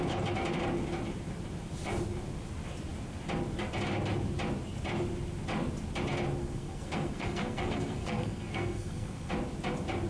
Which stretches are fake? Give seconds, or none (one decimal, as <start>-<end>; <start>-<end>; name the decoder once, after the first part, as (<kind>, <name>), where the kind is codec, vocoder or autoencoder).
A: 6.4-9.3 (codec, SNAC)